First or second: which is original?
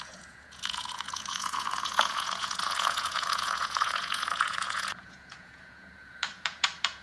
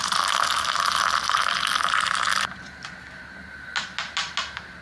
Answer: second